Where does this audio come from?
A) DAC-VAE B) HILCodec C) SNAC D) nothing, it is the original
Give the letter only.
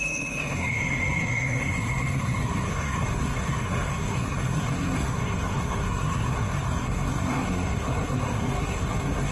C